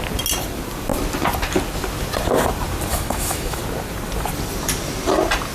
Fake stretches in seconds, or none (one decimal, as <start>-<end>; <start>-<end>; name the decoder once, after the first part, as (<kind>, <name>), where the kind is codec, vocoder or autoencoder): 2.9-3.6 (autoencoder, DAC-VAE)

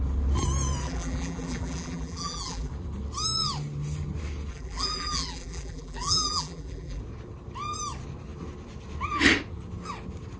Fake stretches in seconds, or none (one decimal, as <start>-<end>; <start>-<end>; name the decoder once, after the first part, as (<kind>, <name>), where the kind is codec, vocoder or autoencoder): 0.8-2.7 (vocoder, BigVGAN v2); 4.5-7.0

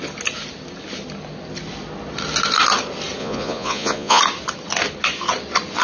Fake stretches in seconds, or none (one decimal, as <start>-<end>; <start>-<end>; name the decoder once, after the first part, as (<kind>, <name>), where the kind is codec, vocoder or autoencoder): 3.2-4.2 (vocoder, Vocos)